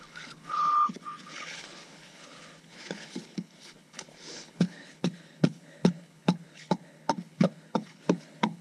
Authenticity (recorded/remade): remade